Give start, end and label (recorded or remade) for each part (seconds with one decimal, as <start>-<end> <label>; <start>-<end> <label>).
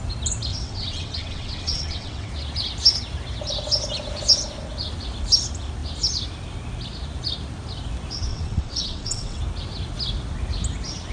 0.0-0.5 recorded; 0.5-2.3 remade; 2.3-8.3 recorded; 8.3-9.4 remade; 9.4-11.1 recorded